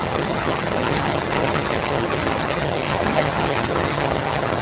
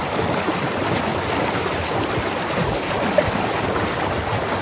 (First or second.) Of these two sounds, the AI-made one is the first